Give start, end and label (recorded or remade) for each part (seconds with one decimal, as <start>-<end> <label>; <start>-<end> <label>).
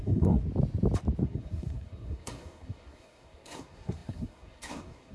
0.0-0.4 remade; 0.4-1.2 recorded; 1.2-5.1 remade